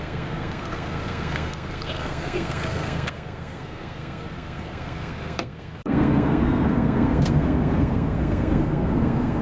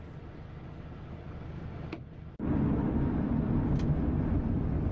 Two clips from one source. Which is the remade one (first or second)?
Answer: first